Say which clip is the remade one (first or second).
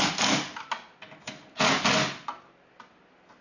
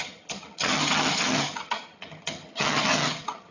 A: second